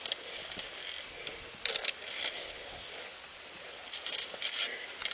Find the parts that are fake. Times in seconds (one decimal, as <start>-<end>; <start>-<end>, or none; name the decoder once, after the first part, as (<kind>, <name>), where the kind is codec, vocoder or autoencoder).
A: 3.1-4.3 (vocoder, BigVGAN v2)